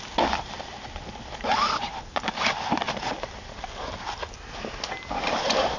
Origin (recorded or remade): recorded